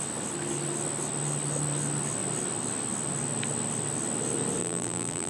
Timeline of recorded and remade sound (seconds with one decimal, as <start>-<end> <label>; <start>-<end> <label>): 0.0-4.6 recorded; 4.6-5.3 remade